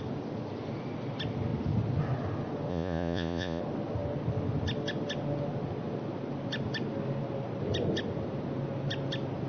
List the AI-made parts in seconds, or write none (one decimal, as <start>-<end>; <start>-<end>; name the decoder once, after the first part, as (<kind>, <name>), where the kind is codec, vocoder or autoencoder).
2.7-3.6 (vocoder, Vocos)